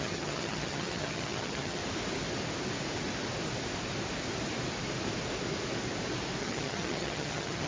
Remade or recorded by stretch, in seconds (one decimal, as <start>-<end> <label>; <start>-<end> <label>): 0.0-1.8 remade; 1.8-6.4 recorded; 6.4-7.7 remade